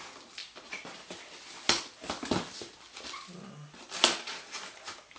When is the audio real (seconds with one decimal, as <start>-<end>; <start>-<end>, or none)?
0.0-5.2